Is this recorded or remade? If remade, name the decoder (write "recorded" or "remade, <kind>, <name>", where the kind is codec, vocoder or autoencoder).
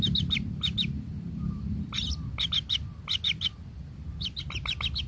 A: recorded